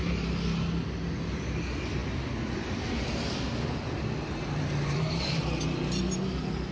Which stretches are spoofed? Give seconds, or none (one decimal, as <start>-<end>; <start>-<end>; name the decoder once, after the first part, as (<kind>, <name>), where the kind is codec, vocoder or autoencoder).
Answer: none